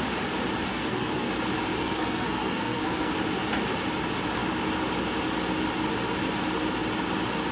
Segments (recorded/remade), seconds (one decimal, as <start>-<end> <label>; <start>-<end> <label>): 0.0-0.7 recorded; 0.7-1.3 remade; 1.3-1.8 recorded; 1.8-3.1 remade; 3.1-7.5 recorded